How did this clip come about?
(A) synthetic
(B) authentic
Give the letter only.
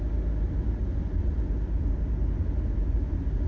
B